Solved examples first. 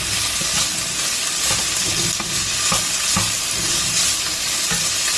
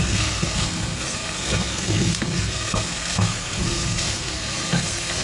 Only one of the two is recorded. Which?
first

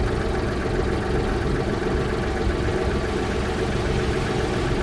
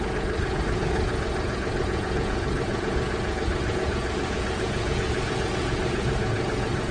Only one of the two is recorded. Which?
first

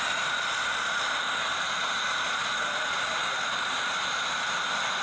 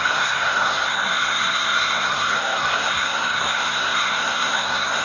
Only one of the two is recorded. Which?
first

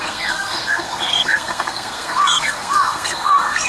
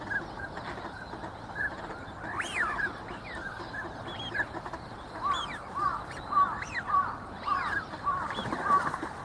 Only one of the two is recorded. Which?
second